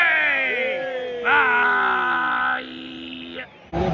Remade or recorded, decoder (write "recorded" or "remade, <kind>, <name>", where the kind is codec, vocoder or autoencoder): recorded